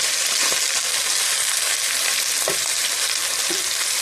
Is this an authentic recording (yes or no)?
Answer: yes